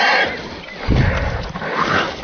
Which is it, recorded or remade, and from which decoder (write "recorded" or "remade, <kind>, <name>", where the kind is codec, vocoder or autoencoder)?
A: recorded